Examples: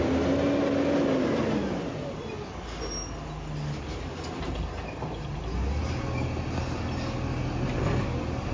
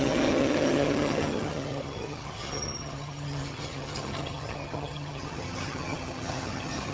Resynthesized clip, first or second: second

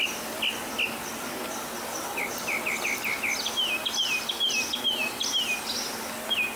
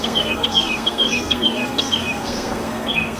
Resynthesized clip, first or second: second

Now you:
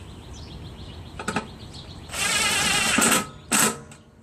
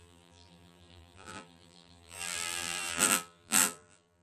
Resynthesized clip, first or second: second